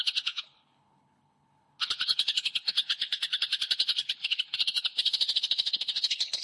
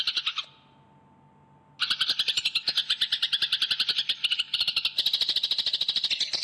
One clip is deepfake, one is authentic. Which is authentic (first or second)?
second